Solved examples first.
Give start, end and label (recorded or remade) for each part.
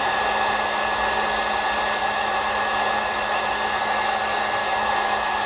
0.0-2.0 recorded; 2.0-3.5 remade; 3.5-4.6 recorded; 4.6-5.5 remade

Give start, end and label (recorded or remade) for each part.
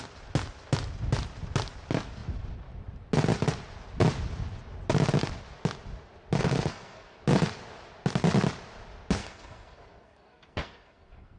0.0-6.4 recorded; 6.4-7.2 remade; 7.2-9.2 recorded; 9.2-11.4 remade